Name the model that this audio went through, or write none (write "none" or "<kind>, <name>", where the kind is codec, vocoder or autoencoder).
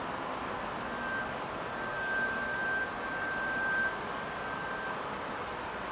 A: none